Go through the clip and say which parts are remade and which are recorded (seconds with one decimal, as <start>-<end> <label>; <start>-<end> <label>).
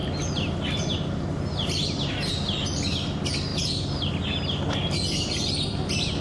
0.0-6.2 recorded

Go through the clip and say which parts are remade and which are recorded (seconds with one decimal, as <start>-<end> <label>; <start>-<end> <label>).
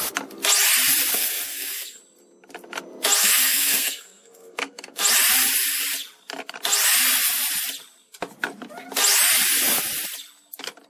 0.0-1.1 recorded; 1.1-2.0 remade; 2.0-3.2 recorded; 3.2-5.0 remade; 5.0-10.9 recorded